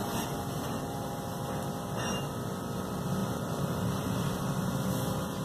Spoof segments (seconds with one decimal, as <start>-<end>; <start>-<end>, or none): 0.0-1.5; 3.2-4.9